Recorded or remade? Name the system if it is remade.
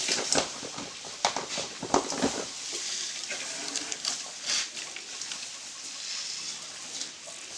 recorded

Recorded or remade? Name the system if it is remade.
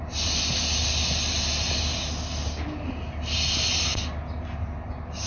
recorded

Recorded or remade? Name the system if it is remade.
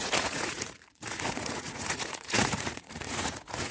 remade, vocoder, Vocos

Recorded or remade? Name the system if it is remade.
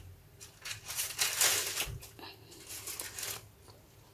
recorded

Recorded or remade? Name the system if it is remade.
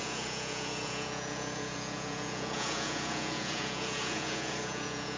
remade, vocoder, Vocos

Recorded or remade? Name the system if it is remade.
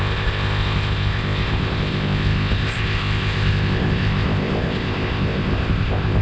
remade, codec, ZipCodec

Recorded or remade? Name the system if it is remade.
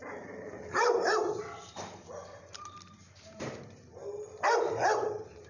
remade, vocoder, BigVGAN v2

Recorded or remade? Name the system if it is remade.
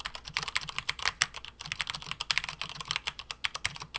recorded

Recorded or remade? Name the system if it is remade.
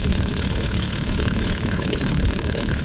remade, codec, HILCodec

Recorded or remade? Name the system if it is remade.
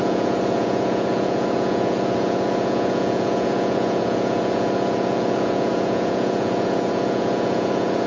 remade, vocoder, Vocos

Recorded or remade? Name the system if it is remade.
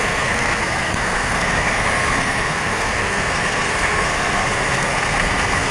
remade, codec, SNAC